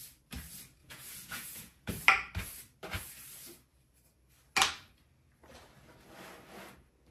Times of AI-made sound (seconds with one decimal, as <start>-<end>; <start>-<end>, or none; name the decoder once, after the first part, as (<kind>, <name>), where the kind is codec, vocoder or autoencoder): 0.8-1.9 (vocoder, Vocos)